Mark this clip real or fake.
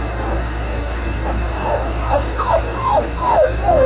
fake